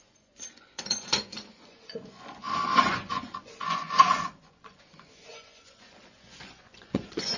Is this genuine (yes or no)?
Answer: no